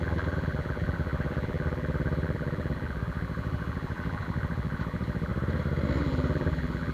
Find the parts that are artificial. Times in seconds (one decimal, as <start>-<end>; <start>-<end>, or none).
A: 0.0-5.3; 6.0-6.9